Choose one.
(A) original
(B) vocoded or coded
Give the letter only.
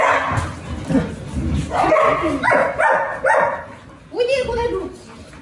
A